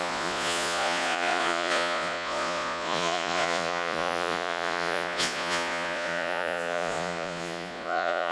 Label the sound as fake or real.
fake